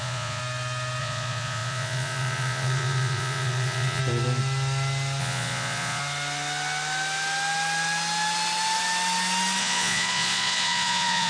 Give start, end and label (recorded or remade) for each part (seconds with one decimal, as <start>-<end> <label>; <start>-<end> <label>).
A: 0.0-0.4 remade; 0.4-1.0 recorded; 1.0-4.0 remade; 4.0-5.2 recorded; 5.2-6.0 remade; 6.0-9.6 recorded; 9.6-11.3 remade